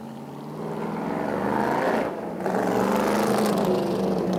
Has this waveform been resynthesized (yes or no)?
no